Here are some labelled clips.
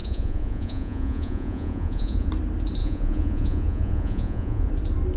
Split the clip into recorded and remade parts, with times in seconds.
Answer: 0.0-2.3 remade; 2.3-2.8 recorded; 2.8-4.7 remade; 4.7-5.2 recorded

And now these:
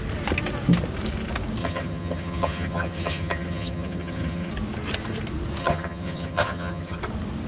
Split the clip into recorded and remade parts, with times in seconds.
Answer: 0.0-1.6 recorded; 1.6-4.5 remade; 4.5-5.6 recorded; 5.6-7.0 remade; 7.0-7.5 recorded

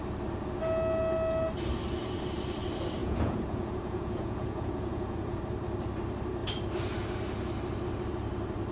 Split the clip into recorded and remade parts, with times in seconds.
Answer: 0.0-3.0 recorded; 3.0-5.4 remade; 5.4-8.7 recorded